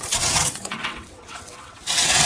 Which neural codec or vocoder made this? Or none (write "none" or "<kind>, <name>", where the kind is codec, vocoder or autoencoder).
vocoder, WaveNeXt